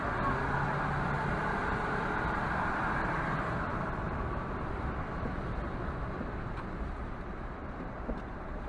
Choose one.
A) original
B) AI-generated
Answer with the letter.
B